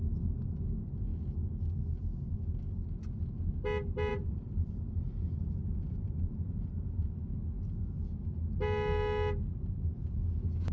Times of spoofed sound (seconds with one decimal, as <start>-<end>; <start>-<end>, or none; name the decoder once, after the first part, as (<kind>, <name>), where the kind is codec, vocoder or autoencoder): 4.1-7.1 (vocoder, BigVGAN v2)